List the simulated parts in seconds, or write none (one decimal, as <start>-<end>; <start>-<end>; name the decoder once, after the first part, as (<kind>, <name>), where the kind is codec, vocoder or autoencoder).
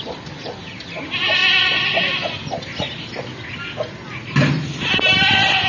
none